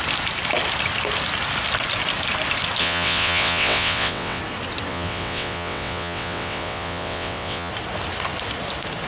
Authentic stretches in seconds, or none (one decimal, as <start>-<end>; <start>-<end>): 0.0-2.8; 4.4-4.9; 7.7-9.1